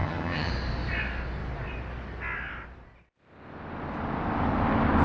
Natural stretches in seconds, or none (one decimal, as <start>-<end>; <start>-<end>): 0.5-5.0